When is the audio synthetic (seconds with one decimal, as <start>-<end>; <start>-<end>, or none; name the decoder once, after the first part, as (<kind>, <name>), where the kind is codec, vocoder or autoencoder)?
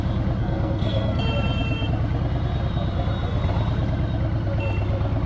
0.4-1.2 (codec, SNAC)